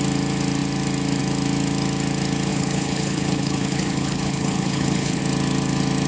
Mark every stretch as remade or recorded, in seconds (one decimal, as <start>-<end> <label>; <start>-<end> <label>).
0.0-2.5 recorded; 2.5-5.2 remade; 5.2-6.1 recorded